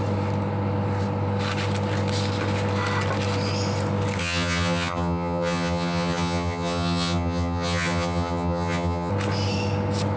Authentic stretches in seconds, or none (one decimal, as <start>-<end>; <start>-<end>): 0.0-4.2; 9.1-10.2